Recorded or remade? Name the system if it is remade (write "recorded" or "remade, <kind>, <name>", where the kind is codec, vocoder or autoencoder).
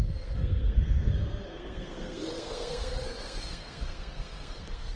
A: remade, codec, SNAC